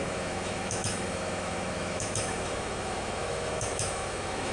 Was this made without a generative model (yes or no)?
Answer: no